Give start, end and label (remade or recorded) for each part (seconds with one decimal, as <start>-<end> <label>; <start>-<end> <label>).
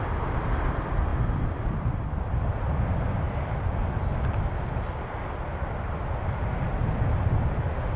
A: 0.0-1.1 recorded; 1.1-5.7 remade; 5.7-8.0 recorded